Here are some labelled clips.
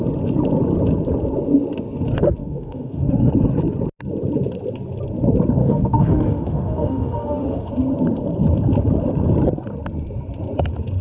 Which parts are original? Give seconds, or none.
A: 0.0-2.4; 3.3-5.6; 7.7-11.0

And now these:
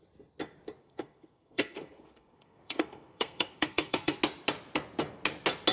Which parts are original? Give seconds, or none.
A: 0.0-0.8; 4.2-5.7

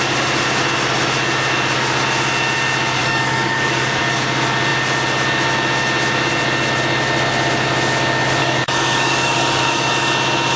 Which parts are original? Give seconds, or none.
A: 0.0-3.0; 4.0-8.4; 9.9-10.6

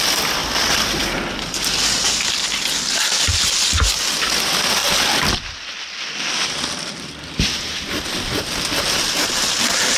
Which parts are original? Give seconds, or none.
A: 0.0-0.4; 1.2-10.0